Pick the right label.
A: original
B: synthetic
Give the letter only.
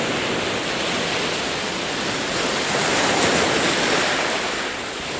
A